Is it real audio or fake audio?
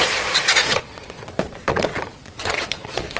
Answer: fake